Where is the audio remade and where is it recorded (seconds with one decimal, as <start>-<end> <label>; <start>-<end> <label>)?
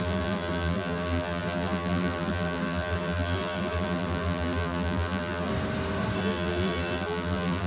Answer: 0.0-5.5 remade; 5.5-6.2 recorded; 6.2-7.7 remade